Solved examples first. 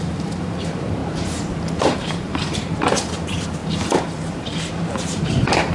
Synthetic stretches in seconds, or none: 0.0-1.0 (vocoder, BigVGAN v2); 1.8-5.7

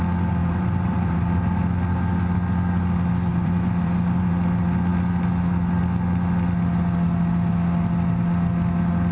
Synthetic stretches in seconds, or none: 0.4-1.6 (vocoder, BigVGAN v2); 3.3-4.3

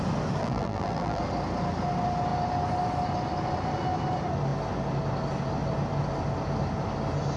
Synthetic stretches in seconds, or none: 0.4-1.2 (vocoder, BigVGAN v2)

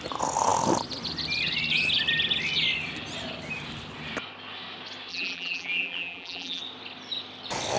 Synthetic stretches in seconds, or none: 5.1-6.6 (vocoder, BigVGAN v2)

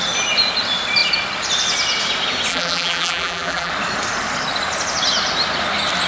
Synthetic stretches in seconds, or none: 2.5-3.7 (vocoder, BigVGAN v2)

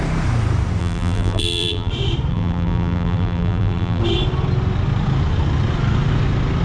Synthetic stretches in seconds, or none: 0.8-1.9 (vocoder, BigVGAN v2); 2.3-4.0

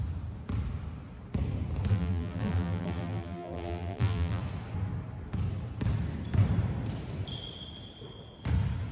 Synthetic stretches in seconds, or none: 1.9-4.4 (vocoder, BigVGAN v2)

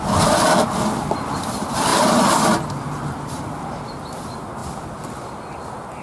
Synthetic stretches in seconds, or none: 1.9-3.6 (vocoder, BigVGAN v2)